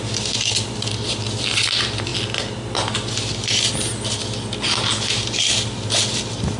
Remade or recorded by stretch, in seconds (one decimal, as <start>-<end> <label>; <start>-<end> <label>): 0.0-6.6 recorded